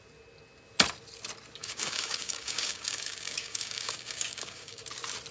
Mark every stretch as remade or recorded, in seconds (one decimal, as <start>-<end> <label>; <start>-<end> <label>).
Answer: 0.0-1.6 recorded; 1.6-4.8 remade; 4.8-5.3 recorded